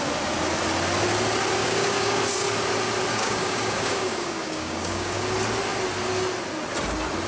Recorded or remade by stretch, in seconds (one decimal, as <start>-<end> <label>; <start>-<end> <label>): 0.0-1.6 recorded; 1.6-2.2 remade; 2.2-3.1 recorded; 3.1-5.2 remade; 5.2-7.3 recorded